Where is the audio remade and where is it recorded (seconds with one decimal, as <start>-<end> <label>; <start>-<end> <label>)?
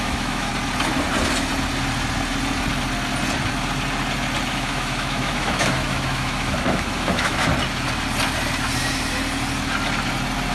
0.0-0.5 remade; 0.5-4.5 recorded; 4.5-7.5 remade; 7.5-10.5 recorded